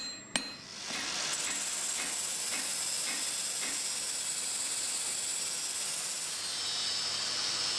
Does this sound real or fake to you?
real